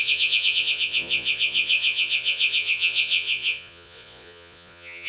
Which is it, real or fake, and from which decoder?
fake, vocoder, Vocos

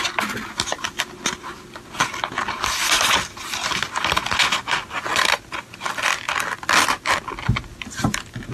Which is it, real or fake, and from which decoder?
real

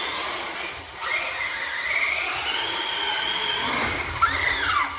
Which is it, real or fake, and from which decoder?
real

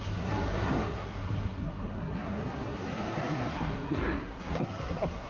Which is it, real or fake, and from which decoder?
fake, codec, SNAC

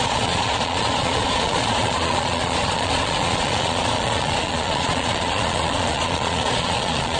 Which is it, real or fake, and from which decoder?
fake, vocoder, Vocos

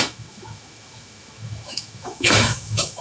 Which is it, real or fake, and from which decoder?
fake, autoencoder, DAC-VAE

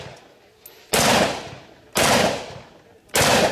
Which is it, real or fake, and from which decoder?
real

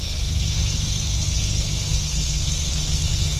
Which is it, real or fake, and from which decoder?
fake, codec, SNAC